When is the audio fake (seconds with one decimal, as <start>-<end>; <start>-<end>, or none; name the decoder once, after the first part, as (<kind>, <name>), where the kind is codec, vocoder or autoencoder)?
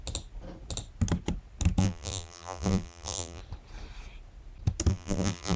1.8-3.4 (vocoder, BigVGAN v2); 4.9-5.6